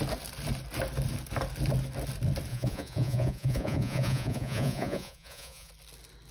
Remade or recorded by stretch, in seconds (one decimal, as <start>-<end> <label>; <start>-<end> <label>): 0.0-2.5 recorded; 2.5-5.7 remade; 5.7-6.3 recorded